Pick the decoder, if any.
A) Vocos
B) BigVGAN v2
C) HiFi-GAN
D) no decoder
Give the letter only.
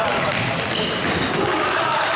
D